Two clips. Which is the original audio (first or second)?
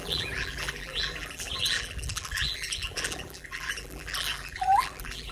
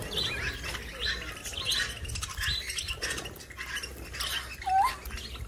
second